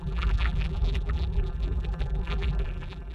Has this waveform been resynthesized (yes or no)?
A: yes